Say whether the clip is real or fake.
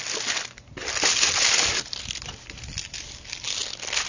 real